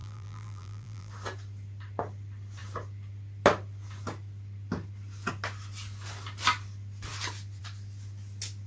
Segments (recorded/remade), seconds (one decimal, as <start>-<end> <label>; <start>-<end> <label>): 0.0-1.1 remade; 1.1-8.7 recorded